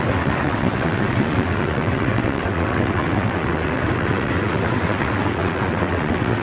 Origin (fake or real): fake